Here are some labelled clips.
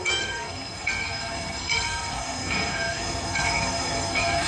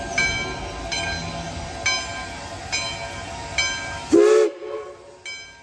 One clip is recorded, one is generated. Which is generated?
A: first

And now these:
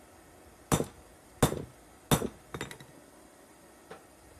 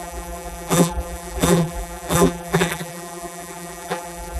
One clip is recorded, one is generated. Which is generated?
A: second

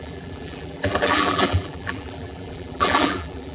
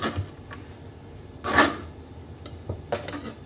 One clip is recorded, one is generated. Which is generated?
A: first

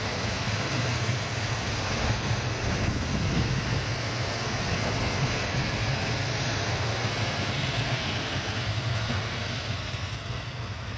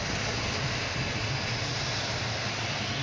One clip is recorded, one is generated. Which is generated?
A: first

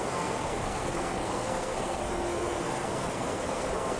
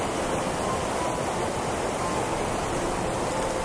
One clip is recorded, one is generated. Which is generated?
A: first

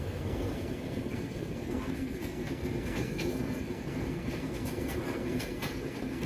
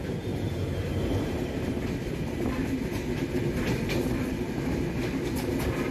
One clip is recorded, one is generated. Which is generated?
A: first